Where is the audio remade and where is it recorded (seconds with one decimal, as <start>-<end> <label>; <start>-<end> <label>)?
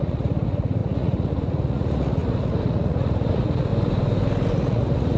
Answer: 0.0-3.7 remade; 3.7-4.5 recorded; 4.5-5.2 remade